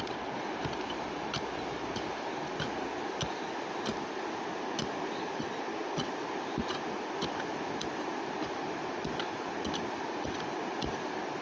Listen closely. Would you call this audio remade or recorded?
recorded